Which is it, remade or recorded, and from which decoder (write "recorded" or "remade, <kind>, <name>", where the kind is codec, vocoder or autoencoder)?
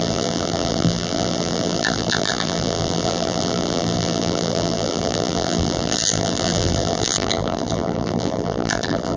remade, vocoder, BigVGAN v2